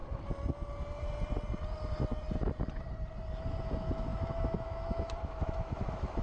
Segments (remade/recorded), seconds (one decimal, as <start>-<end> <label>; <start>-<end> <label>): 0.0-3.6 recorded; 3.6-6.2 remade